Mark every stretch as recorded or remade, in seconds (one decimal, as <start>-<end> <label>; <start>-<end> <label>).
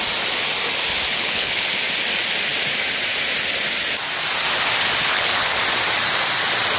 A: 0.0-1.1 recorded; 1.1-1.7 remade; 1.7-5.0 recorded; 5.0-5.6 remade; 5.6-6.8 recorded